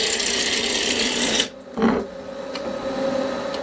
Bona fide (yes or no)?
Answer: yes